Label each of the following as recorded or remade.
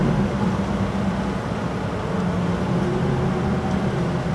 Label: recorded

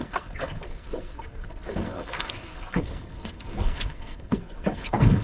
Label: remade